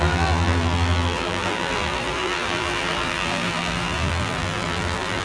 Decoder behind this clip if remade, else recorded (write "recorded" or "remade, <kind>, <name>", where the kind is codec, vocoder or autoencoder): remade, vocoder, BigVGAN v2